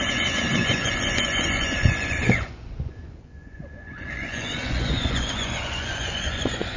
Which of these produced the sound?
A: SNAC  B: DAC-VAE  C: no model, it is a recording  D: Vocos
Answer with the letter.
D